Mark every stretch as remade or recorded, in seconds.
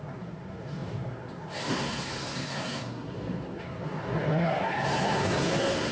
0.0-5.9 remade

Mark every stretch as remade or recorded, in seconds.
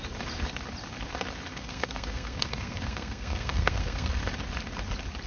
0.0-1.5 recorded; 1.5-4.2 remade; 4.2-5.3 recorded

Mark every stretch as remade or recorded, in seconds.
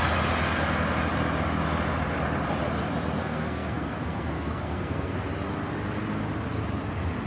0.0-3.2 recorded; 3.2-5.2 remade; 5.2-7.3 recorded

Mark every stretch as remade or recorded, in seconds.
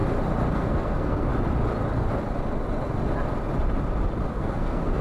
0.0-0.5 recorded; 0.5-1.3 remade; 1.3-4.3 recorded; 4.3-5.0 remade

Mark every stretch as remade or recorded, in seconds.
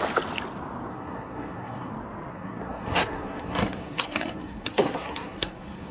0.0-0.9 recorded; 0.9-1.9 remade; 1.9-2.3 recorded; 2.3-5.9 remade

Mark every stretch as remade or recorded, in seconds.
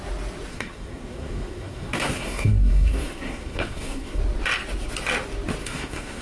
0.0-0.5 recorded; 0.5-4.2 remade; 4.2-5.6 recorded; 5.6-6.2 remade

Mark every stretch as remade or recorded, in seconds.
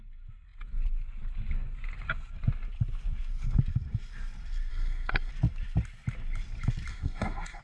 0.0-4.7 recorded; 4.7-5.3 remade; 5.3-6.9 recorded; 6.9-7.6 remade